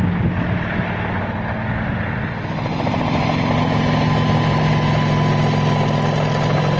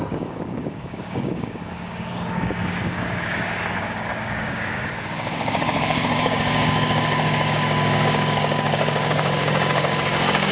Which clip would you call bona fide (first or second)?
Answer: first